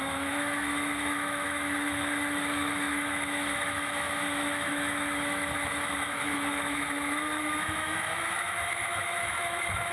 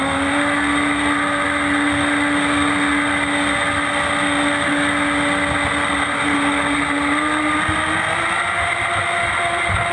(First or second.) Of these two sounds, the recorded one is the second